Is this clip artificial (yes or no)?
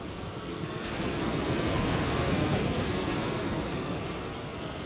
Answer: yes